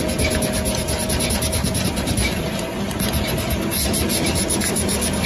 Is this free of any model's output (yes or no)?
yes